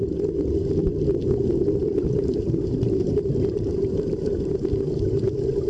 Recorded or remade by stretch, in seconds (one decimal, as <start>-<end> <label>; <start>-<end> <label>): 0.0-1.8 recorded; 1.8-5.2 remade; 5.2-5.7 recorded